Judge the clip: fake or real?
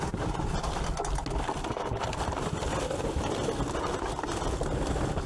real